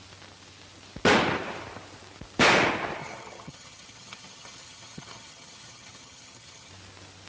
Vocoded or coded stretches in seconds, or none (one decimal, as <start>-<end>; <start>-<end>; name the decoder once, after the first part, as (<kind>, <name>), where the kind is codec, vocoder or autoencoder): 3.0-6.7 (vocoder, HiFi-GAN)